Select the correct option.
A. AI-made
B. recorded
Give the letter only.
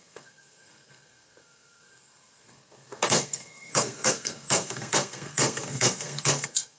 A